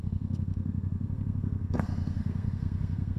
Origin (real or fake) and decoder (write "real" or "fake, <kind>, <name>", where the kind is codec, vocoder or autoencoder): fake, codec, SNAC